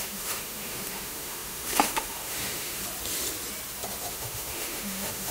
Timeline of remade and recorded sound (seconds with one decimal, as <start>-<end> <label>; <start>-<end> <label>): 0.0-2.8 remade; 2.8-4.1 recorded; 4.1-5.3 remade